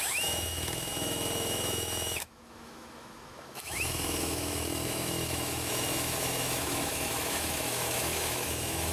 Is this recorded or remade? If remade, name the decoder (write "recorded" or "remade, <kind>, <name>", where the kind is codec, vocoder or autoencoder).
remade, autoencoder, DAC-VAE